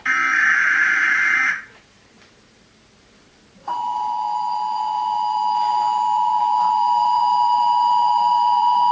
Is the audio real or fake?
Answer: fake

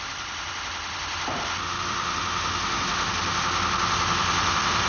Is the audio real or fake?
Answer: real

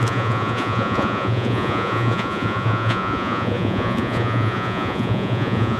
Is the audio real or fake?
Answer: fake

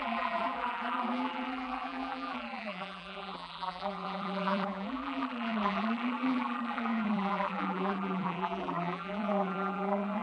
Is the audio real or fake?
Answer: fake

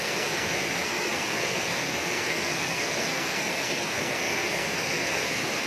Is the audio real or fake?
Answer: fake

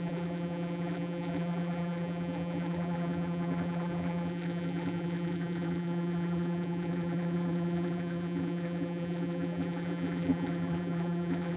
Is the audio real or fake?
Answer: fake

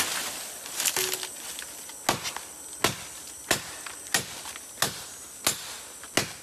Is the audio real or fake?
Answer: real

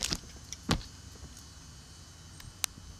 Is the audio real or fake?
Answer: real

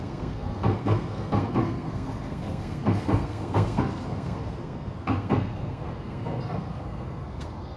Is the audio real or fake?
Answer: fake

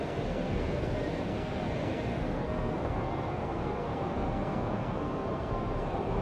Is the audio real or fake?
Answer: fake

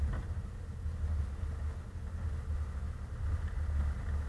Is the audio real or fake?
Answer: real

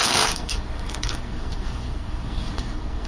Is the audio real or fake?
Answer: fake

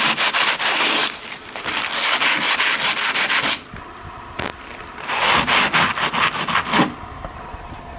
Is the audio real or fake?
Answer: real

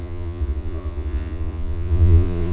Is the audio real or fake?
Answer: fake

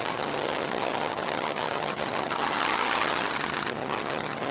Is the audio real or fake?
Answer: fake